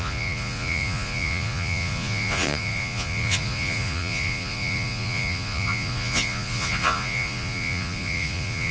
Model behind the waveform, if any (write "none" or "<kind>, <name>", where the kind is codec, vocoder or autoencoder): vocoder, Vocos